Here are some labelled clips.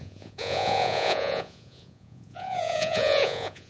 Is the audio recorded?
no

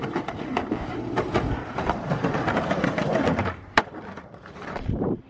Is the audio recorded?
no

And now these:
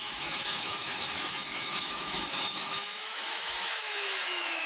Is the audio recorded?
no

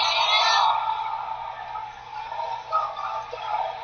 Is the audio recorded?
yes